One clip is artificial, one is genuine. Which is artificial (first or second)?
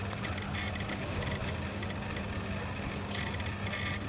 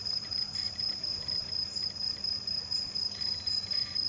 second